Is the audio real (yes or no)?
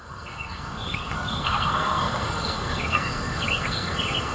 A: no